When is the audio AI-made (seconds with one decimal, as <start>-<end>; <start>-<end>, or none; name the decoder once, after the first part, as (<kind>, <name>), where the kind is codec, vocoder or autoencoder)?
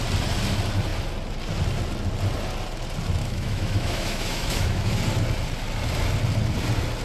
3.2-5.0 (autoencoder, DAC-VAE)